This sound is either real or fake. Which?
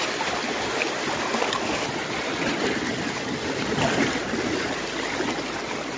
real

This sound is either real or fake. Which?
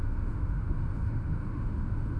fake